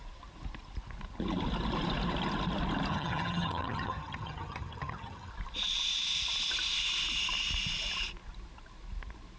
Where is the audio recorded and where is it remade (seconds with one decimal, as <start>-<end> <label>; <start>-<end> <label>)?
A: 0.0-2.9 recorded; 2.9-5.3 remade; 5.3-9.4 recorded